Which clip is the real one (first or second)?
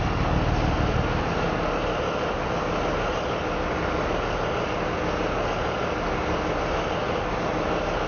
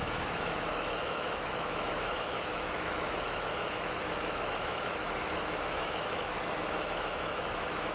first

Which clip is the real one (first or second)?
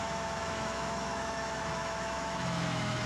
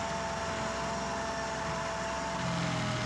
second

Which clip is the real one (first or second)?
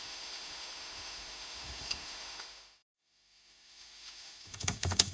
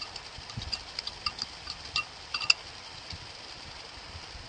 second